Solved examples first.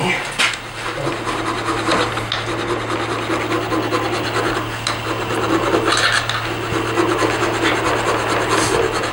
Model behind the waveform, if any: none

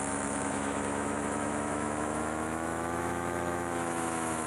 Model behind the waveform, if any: autoencoder, DAC-VAE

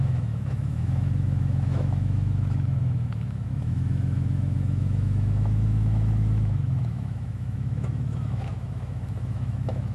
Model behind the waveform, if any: autoencoder, DAC-VAE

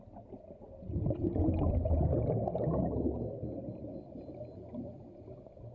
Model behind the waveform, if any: none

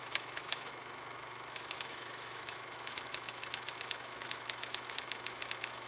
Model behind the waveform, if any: autoencoder, DAC-VAE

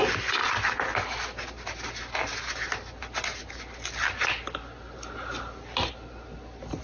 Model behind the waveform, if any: none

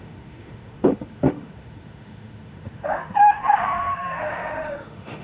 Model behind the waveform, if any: autoencoder, DAC-VAE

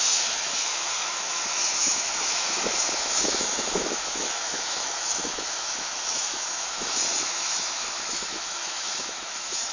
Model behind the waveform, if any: autoencoder, DAC-VAE